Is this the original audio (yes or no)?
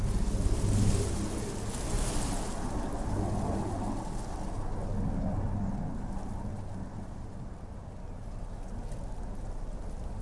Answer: yes